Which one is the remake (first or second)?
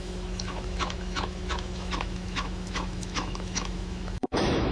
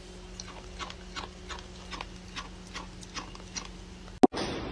first